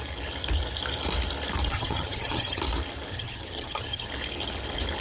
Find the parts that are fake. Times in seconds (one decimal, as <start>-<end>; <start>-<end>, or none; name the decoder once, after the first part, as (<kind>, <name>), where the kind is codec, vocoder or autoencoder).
1.7-2.6 (vocoder, HiFi-GAN); 3.1-4.1